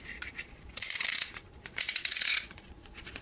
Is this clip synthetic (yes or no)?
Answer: yes